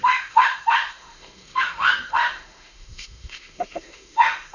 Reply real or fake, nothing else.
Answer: fake